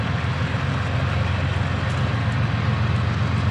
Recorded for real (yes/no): yes